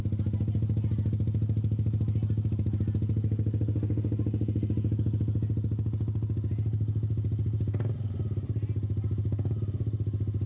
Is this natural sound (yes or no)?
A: yes